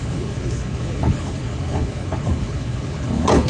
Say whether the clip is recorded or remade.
remade